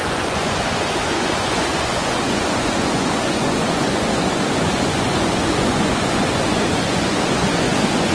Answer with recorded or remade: remade